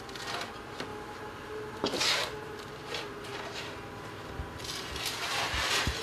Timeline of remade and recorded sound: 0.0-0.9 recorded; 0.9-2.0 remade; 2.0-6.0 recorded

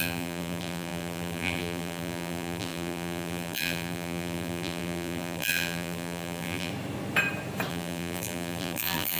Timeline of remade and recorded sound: 0.0-6.7 remade; 6.7-7.7 recorded; 7.7-9.2 remade

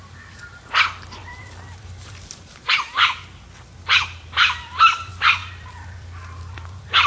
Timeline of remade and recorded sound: 0.0-1.2 recorded; 1.2-2.7 remade; 2.7-5.4 recorded; 5.4-7.1 remade